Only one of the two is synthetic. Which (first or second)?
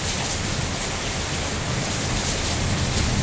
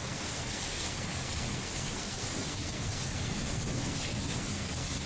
second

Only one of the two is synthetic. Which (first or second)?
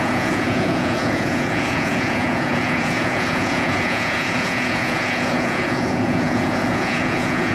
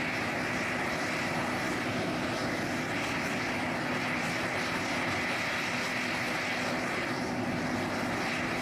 first